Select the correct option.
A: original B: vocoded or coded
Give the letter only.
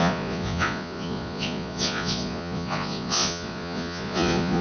B